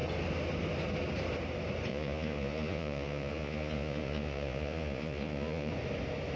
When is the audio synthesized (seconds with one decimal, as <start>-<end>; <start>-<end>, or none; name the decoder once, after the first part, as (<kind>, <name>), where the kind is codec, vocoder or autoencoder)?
1.9-5.7 (vocoder, Vocos)